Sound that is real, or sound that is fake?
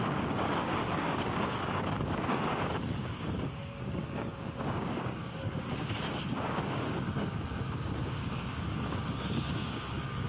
fake